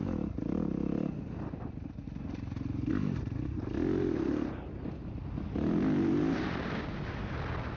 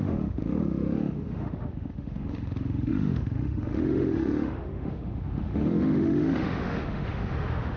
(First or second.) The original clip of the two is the first